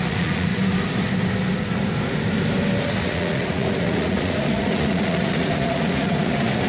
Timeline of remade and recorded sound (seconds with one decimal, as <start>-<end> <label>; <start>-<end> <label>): 0.0-0.5 remade; 0.5-2.8 recorded; 2.8-6.7 remade